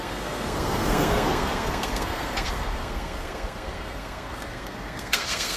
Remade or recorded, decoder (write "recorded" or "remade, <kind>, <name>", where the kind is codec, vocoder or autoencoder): remade, codec, SNAC